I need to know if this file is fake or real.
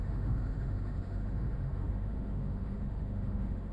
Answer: fake